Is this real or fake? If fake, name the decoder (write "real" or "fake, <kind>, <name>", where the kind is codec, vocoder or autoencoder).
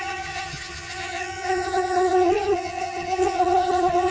fake, vocoder, HiFi-GAN